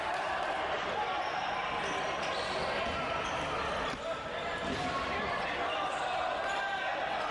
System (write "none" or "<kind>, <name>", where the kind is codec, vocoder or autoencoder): none